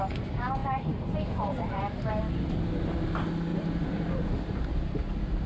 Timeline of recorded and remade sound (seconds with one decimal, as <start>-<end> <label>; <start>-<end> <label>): 0.0-0.6 recorded; 0.6-2.2 remade; 2.2-3.5 recorded; 3.5-4.7 remade; 4.7-5.5 recorded